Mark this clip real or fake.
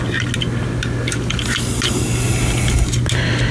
real